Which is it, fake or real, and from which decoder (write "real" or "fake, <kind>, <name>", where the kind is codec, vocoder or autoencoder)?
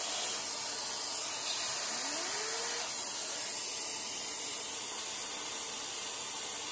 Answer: real